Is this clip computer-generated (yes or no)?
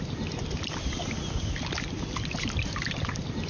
no